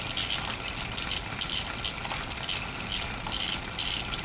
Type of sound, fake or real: real